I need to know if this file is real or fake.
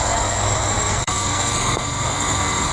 fake